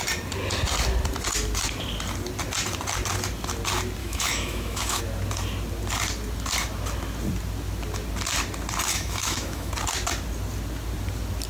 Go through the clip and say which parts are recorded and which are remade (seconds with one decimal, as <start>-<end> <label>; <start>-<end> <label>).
0.0-4.0 recorded; 4.0-5.0 remade; 5.0-8.9 recorded; 8.9-9.7 remade; 9.7-11.5 recorded